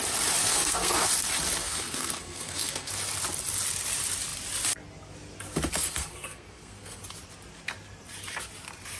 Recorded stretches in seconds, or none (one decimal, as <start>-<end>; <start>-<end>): 0.0-0.4; 1.1-1.6; 2.9-5.7; 7.0-9.0